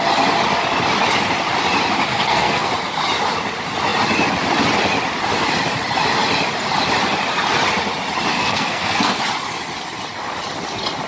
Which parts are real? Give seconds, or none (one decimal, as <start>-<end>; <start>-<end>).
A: 0.0-2.1; 2.7-8.3; 9.2-11.1